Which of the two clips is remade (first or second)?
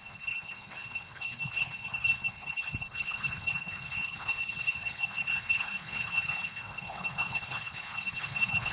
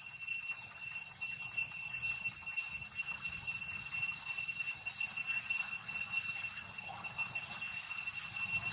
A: first